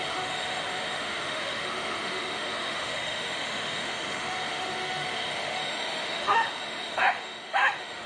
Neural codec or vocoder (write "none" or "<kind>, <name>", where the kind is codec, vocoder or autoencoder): autoencoder, DAC-VAE